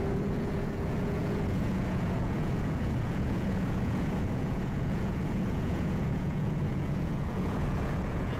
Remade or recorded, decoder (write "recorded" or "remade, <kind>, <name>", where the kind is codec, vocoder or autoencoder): remade, vocoder, Vocos